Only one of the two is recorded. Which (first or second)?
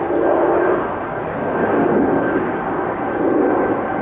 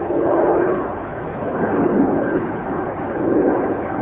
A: first